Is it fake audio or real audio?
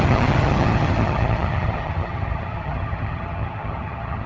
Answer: fake